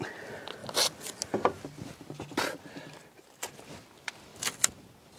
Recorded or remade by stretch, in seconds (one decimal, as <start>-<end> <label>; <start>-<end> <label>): 0.0-5.2 recorded